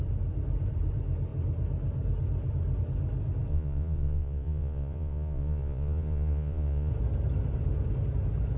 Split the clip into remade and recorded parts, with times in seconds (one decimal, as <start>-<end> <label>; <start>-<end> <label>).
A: 0.0-3.5 recorded; 3.5-6.9 remade; 6.9-8.6 recorded